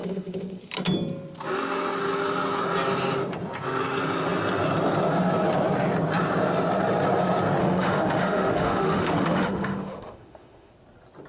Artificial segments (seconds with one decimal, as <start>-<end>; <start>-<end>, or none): 0.0-0.6; 7.6-10.7